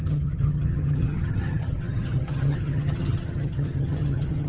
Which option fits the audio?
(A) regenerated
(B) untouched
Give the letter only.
A